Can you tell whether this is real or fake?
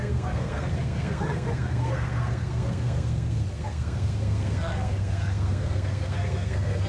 fake